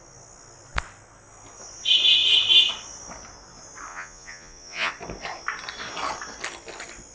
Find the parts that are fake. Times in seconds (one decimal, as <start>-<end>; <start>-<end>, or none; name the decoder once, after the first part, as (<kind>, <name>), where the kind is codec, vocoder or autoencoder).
3.9-4.9 (vocoder, Vocos)